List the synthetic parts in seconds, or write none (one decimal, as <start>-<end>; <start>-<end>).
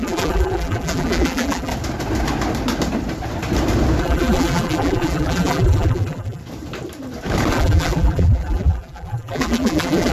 0.0-1.7; 4.0-6.4; 7.5-10.1